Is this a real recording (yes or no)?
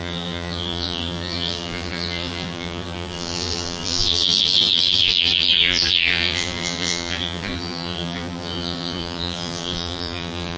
no